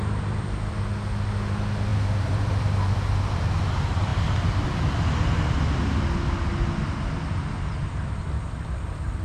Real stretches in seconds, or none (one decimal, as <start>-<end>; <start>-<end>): 0.0-1.9; 3.5-9.2